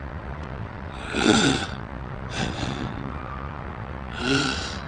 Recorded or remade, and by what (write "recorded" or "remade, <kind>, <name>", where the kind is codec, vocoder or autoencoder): remade, vocoder, WaveNeXt